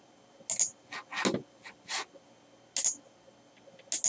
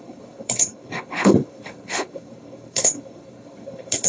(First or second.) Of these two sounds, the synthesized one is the second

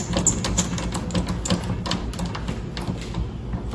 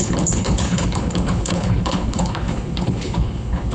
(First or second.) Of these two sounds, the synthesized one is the second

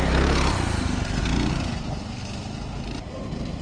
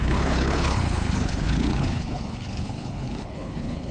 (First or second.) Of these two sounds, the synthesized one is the second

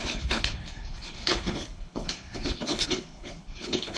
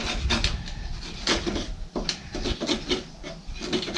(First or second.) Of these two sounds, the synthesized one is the first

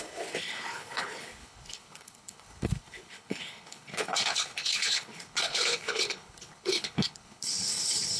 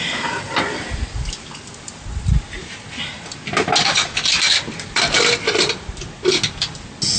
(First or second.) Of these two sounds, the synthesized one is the first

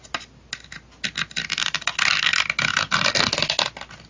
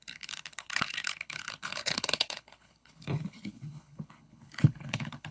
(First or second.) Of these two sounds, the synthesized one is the second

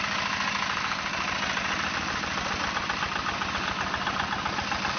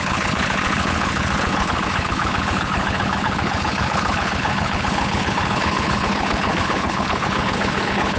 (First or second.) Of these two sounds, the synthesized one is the second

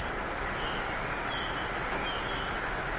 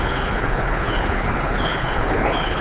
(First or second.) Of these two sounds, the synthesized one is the second